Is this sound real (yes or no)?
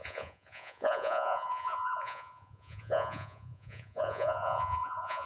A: no